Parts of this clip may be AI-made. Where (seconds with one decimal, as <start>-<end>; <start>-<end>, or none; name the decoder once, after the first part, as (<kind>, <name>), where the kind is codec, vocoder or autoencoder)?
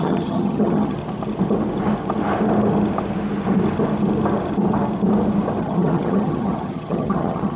0.0-1.0 (vocoder, HiFi-GAN); 5.6-7.6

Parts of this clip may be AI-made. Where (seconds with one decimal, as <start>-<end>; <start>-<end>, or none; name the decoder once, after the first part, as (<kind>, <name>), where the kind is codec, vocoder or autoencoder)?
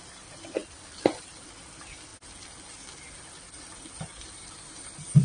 none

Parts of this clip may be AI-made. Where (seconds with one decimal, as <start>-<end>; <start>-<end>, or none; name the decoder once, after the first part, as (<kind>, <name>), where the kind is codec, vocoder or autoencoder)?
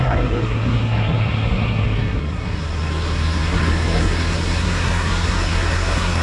0.0-6.2 (codec, SNAC)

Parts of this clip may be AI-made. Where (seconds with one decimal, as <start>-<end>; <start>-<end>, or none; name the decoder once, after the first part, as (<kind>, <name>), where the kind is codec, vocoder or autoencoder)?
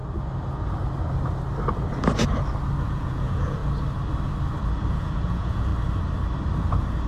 2.8-3.6 (vocoder, Vocos); 4.9-5.7